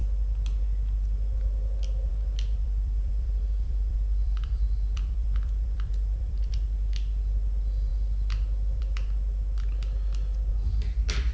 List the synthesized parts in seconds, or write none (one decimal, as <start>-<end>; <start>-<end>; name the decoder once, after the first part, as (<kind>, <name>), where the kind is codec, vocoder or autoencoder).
2.6-6.5 (vocoder, BigVGAN v2)